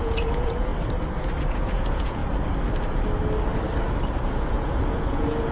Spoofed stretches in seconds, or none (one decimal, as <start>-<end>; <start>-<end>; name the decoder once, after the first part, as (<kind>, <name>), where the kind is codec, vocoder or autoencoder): 0.0-0.7 (vocoder, Vocos); 1.4-2.2; 4.3-5.5